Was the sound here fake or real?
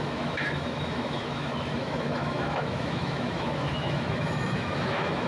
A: fake